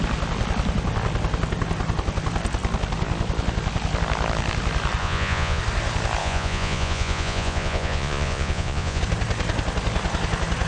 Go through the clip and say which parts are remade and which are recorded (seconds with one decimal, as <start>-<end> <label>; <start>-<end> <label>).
0.0-5.0 recorded; 5.0-5.6 remade; 5.6-6.2 recorded; 6.2-9.0 remade; 9.0-10.7 recorded